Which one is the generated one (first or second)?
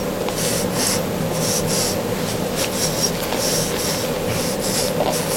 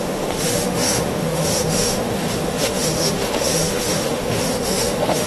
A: second